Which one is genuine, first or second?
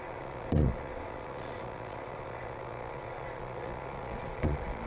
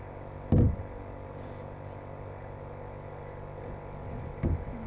second